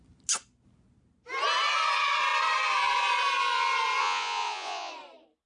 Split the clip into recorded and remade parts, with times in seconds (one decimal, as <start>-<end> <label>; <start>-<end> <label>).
0.0-4.0 recorded; 4.0-4.9 remade; 4.9-5.5 recorded